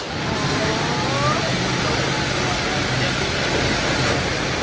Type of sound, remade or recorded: recorded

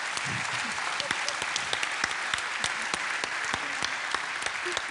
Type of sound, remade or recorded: recorded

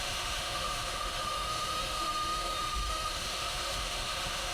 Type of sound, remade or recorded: remade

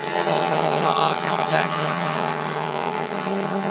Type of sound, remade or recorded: remade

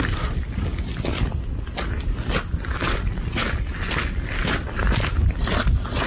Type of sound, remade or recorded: recorded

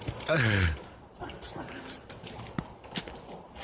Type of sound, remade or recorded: recorded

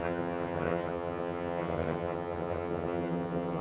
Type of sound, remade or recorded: remade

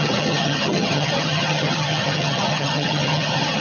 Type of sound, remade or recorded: remade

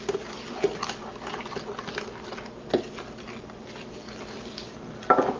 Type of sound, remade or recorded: recorded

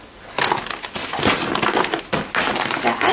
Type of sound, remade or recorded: recorded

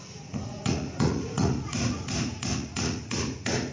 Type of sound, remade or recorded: remade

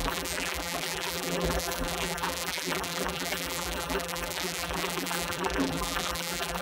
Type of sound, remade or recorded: remade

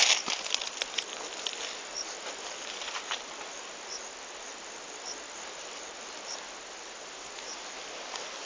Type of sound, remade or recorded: recorded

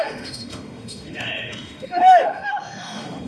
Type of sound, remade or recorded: remade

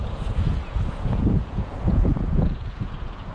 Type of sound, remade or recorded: remade